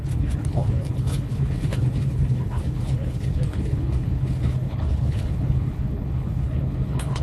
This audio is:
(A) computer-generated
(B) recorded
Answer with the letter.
A